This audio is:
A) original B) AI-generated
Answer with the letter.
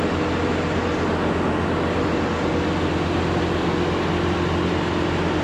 A